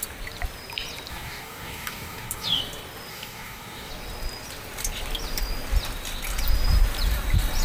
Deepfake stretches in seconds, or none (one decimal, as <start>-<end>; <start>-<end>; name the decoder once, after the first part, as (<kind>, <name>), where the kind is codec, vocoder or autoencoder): 1.1-2.6 (codec, DAC); 3.1-3.9